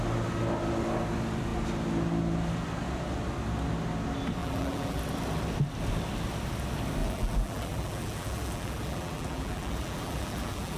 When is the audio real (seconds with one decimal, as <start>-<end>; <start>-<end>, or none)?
0.0-4.4; 5.0-7.0